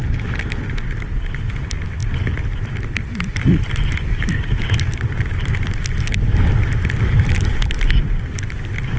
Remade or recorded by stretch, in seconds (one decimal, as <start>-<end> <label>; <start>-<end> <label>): 0.0-9.0 recorded